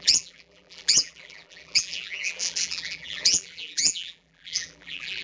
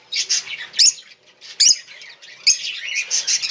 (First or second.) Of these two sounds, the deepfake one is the first